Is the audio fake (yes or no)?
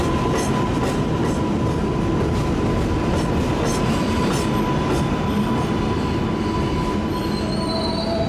no